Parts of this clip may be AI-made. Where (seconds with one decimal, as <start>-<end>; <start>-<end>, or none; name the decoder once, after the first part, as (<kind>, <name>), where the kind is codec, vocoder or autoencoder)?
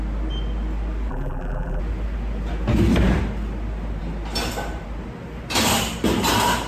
1.1-1.8 (vocoder, BigVGAN v2)